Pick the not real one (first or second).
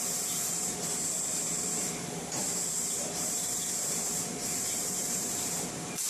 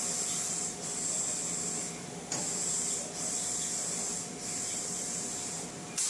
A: first